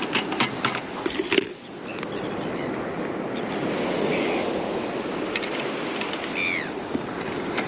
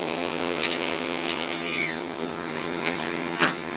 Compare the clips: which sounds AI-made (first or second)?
second